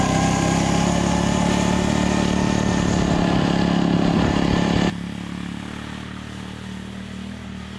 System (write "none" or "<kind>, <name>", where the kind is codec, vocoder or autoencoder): none